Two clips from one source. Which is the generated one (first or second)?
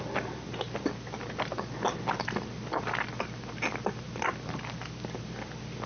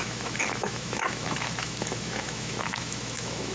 second